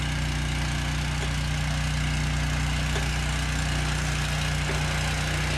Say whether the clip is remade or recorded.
recorded